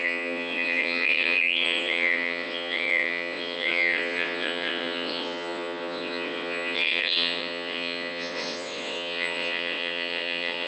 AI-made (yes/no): yes